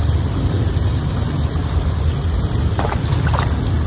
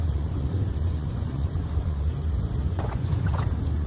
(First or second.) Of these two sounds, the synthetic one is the second